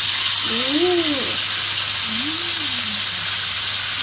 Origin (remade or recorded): recorded